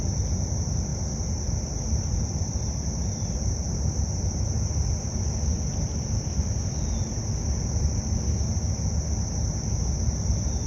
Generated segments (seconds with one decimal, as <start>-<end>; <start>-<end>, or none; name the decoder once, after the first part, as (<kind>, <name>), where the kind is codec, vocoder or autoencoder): none